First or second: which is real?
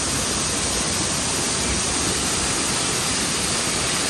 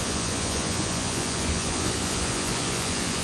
first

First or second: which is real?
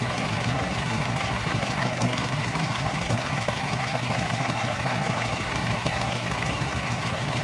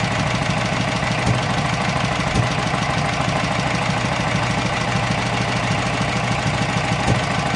second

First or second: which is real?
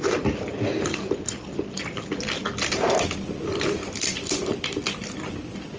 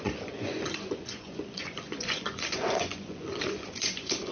first